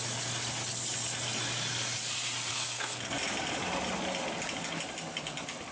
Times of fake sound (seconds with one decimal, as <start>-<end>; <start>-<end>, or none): 2.5-3.1